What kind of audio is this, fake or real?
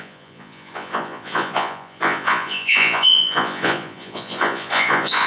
fake